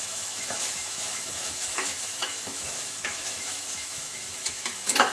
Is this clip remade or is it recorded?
remade